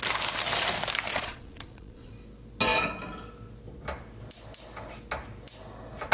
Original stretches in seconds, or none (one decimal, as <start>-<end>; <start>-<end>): 0.0-1.1; 2.1-6.1